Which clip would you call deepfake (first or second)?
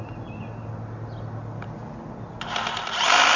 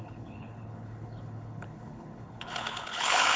second